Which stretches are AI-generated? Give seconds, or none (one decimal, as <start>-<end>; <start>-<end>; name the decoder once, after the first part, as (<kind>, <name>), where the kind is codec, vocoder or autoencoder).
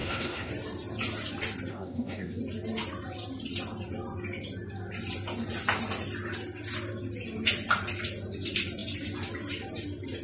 0.0-0.5 (codec, SNAC); 1.7-2.4